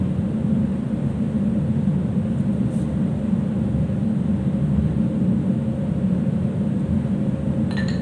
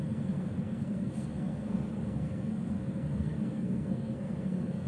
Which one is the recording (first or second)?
first